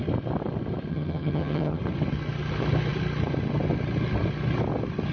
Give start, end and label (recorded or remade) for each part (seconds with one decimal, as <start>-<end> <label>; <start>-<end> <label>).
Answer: 0.0-0.9 recorded; 0.9-1.8 remade; 1.8-5.1 recorded